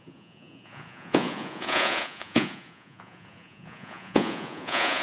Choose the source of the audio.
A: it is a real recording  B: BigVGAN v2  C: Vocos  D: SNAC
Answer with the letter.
C